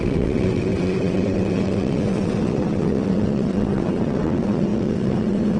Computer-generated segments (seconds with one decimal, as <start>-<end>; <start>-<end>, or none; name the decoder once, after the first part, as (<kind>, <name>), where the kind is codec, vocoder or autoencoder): 0.0-5.6 (vocoder, WaveNeXt)